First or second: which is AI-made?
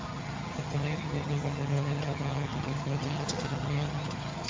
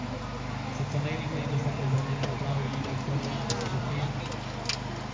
first